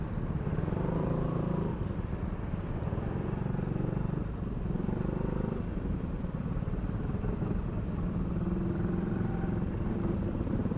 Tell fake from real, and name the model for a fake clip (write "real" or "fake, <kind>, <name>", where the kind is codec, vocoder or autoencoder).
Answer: fake, vocoder, BigVGAN v2